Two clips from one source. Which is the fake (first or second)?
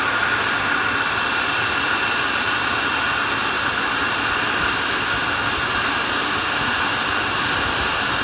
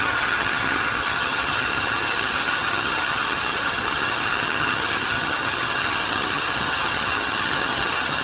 second